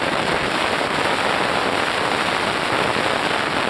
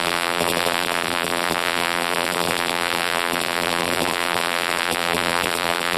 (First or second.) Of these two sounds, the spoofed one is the second